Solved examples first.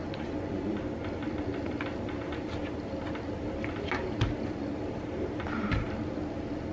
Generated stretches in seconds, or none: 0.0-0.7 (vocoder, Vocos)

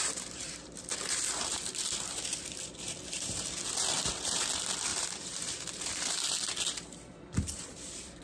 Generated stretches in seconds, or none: 0.0-8.2 (vocoder, BigVGAN v2)